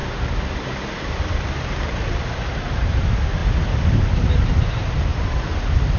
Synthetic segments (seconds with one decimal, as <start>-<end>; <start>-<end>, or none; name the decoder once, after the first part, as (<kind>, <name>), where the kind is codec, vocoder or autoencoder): 0.0-3.4 (vocoder, BigVGAN v2); 3.9-6.0